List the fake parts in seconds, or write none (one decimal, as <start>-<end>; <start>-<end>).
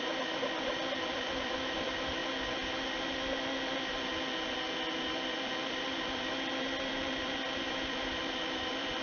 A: 0.0-2.2; 5.1-9.0